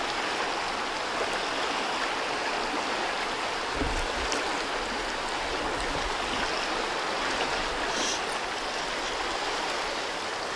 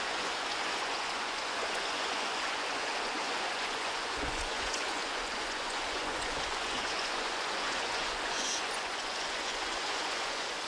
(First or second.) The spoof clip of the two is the second